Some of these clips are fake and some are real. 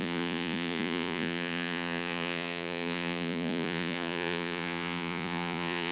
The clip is fake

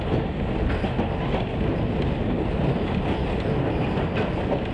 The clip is real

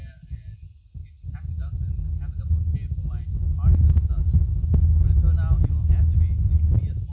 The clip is real